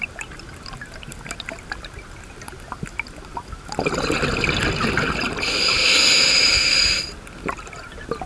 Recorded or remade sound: recorded